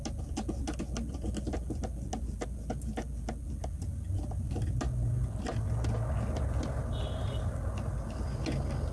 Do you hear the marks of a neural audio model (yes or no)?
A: no